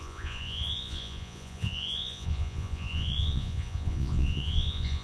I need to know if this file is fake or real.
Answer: fake